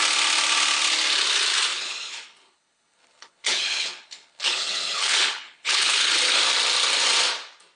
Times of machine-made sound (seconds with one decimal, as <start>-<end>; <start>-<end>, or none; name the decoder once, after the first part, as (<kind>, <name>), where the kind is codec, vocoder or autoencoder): 1.7-6.4 (codec, HILCodec)